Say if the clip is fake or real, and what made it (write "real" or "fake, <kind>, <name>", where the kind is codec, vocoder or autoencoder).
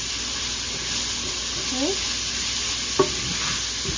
real